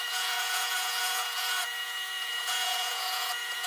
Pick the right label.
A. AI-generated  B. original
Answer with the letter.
A